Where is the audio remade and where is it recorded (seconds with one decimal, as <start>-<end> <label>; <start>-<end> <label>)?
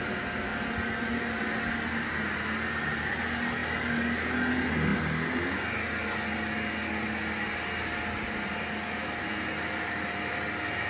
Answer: 0.0-10.9 recorded